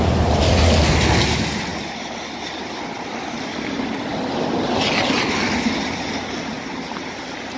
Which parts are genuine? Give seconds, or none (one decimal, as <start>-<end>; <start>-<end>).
0.0-7.6